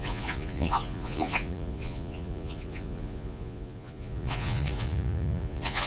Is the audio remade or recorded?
remade